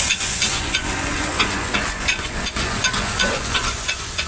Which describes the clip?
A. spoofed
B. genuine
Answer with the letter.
A